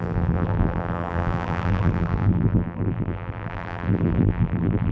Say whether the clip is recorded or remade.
remade